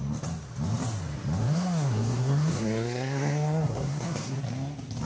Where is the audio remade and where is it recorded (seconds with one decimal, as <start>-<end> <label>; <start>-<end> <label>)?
0.0-1.4 recorded; 1.4-4.4 remade; 4.4-5.0 recorded